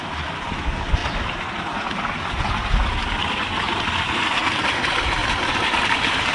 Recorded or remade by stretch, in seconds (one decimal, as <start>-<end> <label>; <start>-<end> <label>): 0.0-5.2 recorded; 5.2-6.3 remade